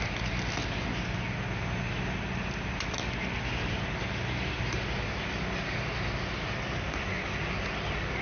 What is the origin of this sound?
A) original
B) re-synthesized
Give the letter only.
A